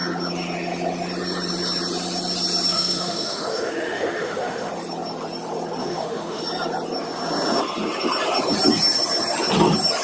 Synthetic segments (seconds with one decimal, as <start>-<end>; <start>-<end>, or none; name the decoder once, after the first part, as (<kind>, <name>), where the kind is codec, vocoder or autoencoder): 2.7-4.7 (autoencoder, DAC-VAE); 5.8-6.4

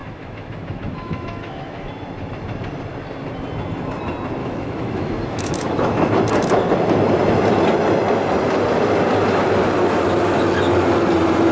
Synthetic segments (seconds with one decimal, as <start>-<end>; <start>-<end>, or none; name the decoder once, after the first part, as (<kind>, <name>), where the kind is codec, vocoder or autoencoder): 0.0-1.9 (autoencoder, DAC-VAE); 4.4-6.1

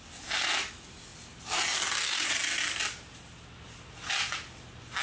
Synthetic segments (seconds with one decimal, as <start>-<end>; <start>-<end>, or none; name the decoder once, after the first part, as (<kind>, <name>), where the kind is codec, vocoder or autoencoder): none

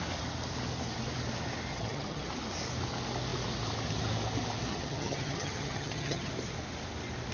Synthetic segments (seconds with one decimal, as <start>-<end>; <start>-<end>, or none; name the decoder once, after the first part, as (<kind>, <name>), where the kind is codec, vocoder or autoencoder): 1.7-2.3 (vocoder, HiFi-GAN); 4.7-6.3

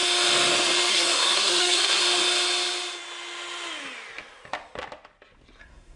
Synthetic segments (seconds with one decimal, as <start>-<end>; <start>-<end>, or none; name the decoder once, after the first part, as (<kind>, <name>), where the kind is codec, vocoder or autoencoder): 0.9-2.0 (codec, SNAC); 5.6-6.0